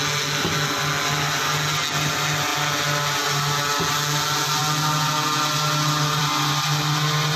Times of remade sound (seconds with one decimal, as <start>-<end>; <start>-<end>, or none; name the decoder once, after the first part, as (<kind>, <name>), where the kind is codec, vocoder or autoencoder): none